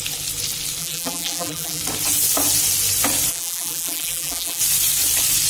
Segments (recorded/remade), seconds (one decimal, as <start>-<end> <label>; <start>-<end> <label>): 0.0-0.8 recorded; 0.8-1.8 remade; 1.8-3.3 recorded; 3.3-4.6 remade; 4.6-5.5 recorded